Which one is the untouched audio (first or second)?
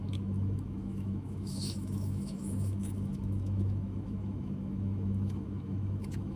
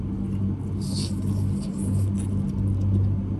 second